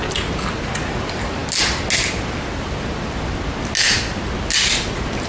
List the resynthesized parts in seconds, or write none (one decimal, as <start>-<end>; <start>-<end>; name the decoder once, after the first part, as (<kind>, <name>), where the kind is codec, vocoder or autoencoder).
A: none